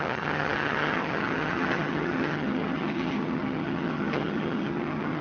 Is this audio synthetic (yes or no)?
yes